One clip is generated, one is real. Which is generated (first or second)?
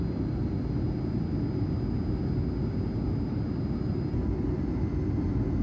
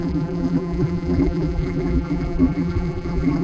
second